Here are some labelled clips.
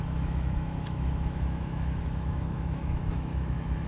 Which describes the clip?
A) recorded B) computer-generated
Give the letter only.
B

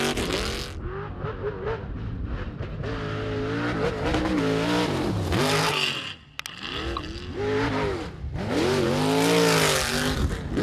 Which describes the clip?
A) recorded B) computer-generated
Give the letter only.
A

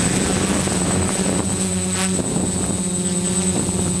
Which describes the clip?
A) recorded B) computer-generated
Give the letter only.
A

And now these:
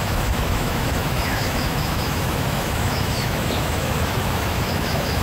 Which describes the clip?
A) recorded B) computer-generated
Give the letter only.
B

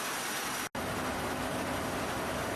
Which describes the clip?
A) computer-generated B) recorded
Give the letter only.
B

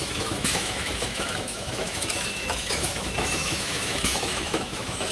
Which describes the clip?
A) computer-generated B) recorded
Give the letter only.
A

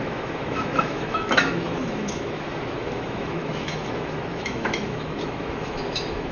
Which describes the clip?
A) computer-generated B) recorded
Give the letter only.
A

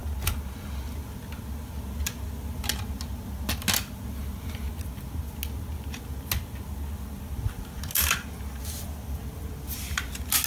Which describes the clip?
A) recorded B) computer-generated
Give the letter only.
A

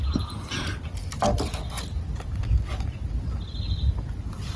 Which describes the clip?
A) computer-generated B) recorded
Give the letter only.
B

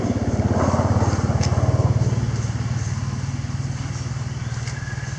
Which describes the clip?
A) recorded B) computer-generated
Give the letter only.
A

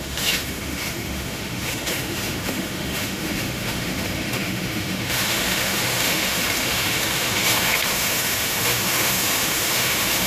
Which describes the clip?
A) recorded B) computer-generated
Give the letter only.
B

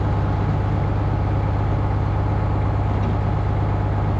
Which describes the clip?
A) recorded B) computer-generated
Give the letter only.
A